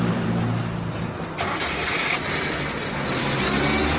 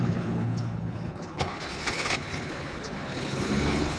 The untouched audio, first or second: first